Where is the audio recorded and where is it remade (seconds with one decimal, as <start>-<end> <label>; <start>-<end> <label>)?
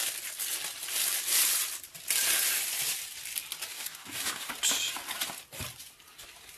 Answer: 0.0-3.7 recorded; 3.7-4.5 remade; 4.5-6.6 recorded